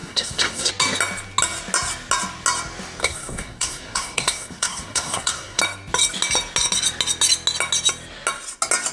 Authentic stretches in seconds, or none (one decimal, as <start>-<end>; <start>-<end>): 0.7-3.0; 5.6-8.9